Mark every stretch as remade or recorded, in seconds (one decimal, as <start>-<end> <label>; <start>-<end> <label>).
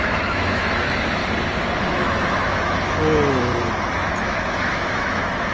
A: 0.0-1.2 remade; 1.2-1.8 recorded; 1.8-3.5 remade; 3.5-4.2 recorded; 4.2-5.5 remade